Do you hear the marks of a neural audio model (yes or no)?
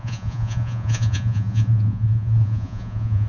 yes